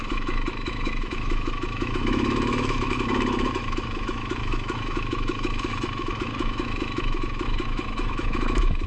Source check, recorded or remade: remade